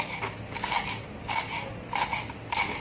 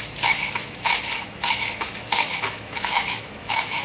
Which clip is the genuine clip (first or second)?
first